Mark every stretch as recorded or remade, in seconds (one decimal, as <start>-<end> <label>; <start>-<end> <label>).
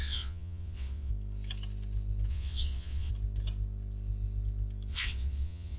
0.0-1.1 remade; 1.1-2.3 recorded; 2.3-3.1 remade; 3.1-4.9 recorded; 4.9-5.8 remade